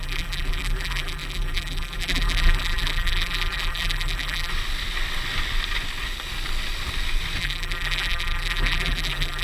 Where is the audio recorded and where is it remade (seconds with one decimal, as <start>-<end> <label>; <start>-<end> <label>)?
0.0-4.5 remade; 4.5-7.4 recorded; 7.4-9.4 remade

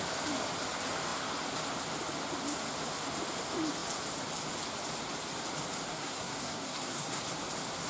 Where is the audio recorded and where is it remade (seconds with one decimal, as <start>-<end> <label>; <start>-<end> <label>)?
0.0-5.9 recorded; 5.9-7.2 remade; 7.2-7.9 recorded

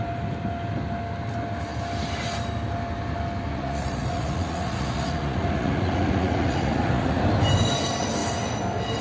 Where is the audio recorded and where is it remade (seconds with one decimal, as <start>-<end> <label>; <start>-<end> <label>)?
0.0-3.5 recorded; 3.5-7.2 remade; 7.2-9.0 recorded

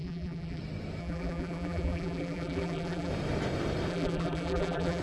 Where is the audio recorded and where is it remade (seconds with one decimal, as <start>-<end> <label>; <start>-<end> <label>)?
0.0-0.6 remade; 0.6-1.0 recorded; 1.0-3.1 remade; 3.1-3.9 recorded; 3.9-5.0 remade

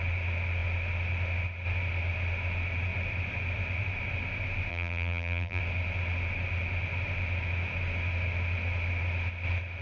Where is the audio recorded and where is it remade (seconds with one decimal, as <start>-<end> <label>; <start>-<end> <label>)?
0.0-4.7 recorded; 4.7-5.6 remade; 5.6-9.8 recorded

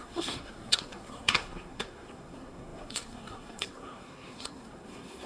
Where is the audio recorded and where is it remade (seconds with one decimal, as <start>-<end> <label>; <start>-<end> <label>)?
0.0-5.3 remade